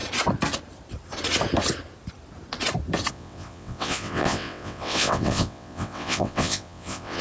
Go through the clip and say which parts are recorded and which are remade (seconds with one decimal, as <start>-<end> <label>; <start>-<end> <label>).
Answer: 0.0-3.1 recorded; 3.1-7.2 remade